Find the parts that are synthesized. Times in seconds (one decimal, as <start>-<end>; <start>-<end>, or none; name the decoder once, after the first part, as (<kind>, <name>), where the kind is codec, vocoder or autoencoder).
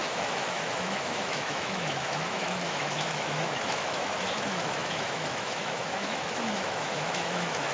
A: 0.0-7.7 (autoencoder, DAC-VAE)